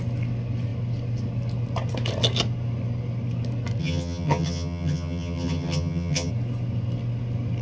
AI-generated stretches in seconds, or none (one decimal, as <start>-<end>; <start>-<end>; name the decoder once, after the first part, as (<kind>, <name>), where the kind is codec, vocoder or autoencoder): 3.8-6.3 (vocoder, HiFi-GAN)